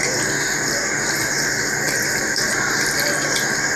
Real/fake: real